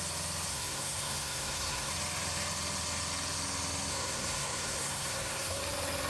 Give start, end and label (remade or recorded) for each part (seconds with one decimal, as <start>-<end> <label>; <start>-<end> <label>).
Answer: 0.0-0.5 recorded; 0.5-1.9 remade; 1.9-3.9 recorded; 3.9-5.6 remade; 5.6-6.1 recorded